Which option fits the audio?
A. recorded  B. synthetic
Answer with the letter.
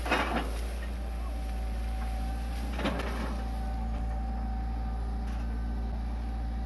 A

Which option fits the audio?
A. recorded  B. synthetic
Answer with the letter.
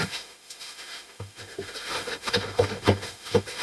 B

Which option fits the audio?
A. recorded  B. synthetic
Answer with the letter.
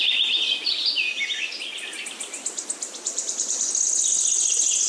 A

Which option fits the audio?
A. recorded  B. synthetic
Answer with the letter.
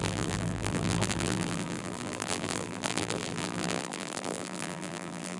B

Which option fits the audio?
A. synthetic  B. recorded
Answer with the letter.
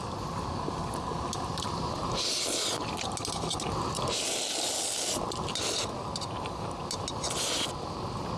B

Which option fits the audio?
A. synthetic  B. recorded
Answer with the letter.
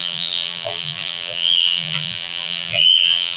A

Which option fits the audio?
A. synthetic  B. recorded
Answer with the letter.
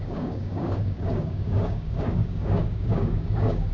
A